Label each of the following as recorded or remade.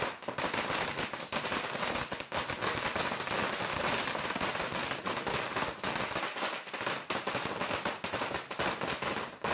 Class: recorded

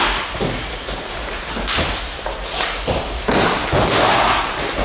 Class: recorded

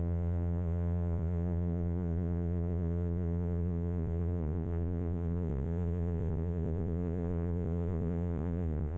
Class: remade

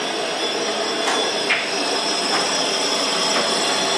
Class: recorded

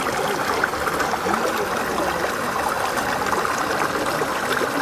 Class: recorded